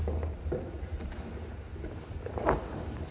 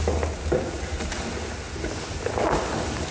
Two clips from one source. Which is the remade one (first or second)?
first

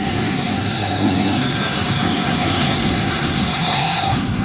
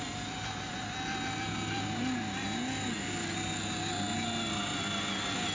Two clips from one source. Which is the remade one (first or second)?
first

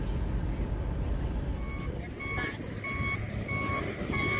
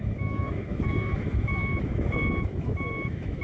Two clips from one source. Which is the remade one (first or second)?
second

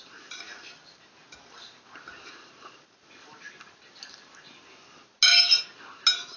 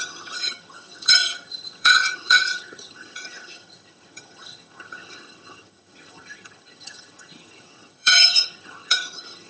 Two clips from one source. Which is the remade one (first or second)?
second